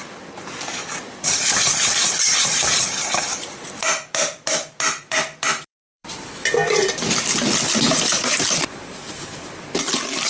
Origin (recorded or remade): remade